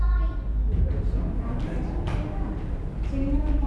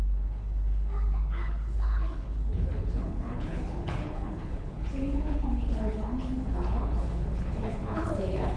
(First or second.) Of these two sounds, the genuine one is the first